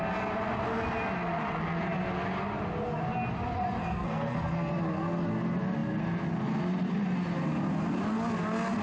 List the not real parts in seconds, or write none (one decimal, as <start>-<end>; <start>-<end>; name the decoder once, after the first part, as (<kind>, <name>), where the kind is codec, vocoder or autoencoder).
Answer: 3.8-4.7 (codec, SNAC)